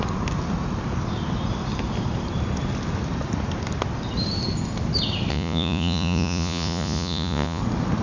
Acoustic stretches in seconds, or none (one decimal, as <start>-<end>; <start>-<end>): 0.0-5.3; 7.6-8.0